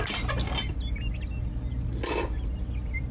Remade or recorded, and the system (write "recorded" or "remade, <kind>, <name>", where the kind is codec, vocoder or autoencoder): recorded